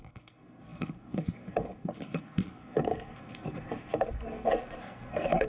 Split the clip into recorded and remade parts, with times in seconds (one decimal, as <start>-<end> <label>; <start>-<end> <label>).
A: 0.0-5.5 remade